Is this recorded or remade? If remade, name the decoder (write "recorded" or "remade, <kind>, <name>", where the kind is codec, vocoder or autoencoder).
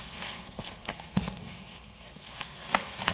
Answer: remade, codec, SNAC